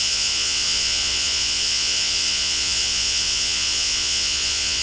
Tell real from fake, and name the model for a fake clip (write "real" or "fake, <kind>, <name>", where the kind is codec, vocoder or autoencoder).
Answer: fake, vocoder, Vocos